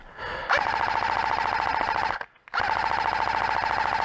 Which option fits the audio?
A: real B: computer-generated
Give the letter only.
A